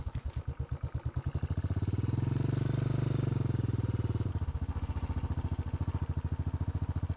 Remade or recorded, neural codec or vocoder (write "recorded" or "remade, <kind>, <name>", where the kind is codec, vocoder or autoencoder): recorded